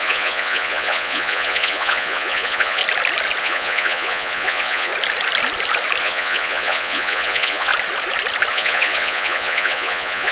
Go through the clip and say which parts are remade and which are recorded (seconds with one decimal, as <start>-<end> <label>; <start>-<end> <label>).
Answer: 0.0-2.8 remade; 2.8-3.4 recorded; 3.4-4.9 remade; 4.9-6.0 recorded; 6.0-7.7 remade; 7.7-8.5 recorded; 8.5-10.3 remade